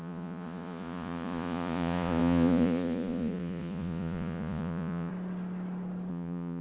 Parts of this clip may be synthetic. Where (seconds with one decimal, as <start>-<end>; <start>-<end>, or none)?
0.0-5.1; 6.1-6.6